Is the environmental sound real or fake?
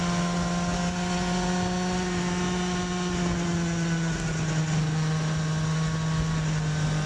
real